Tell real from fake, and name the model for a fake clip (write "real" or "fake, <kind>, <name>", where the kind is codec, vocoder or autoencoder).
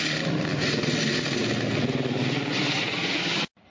real